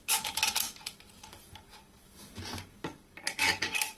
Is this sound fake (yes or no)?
yes